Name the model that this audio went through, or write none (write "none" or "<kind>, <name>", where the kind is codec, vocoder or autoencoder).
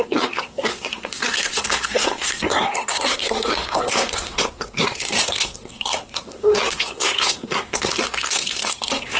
codec, SNAC